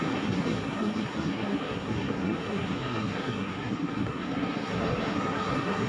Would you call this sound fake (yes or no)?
yes